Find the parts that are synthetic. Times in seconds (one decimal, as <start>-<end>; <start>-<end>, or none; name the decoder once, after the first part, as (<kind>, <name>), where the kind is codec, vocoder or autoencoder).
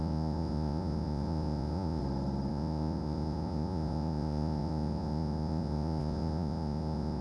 0.0-2.0 (vocoder, Vocos); 2.5-7.2